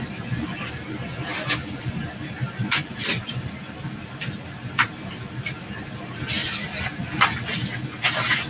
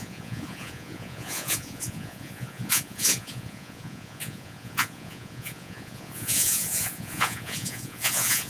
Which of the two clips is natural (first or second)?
first